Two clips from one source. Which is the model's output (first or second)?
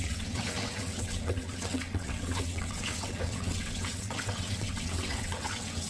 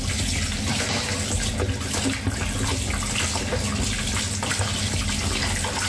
first